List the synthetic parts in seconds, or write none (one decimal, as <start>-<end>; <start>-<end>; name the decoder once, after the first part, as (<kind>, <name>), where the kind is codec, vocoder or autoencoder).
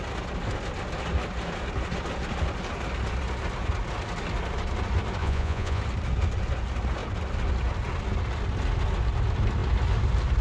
5.2-5.8 (vocoder, Vocos)